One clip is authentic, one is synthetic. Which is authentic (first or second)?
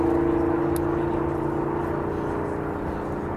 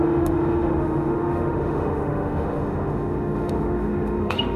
first